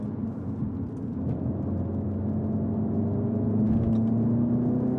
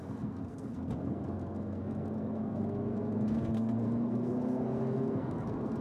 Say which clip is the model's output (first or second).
second